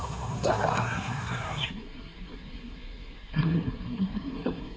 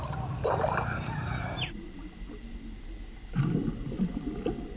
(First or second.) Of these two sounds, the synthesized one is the first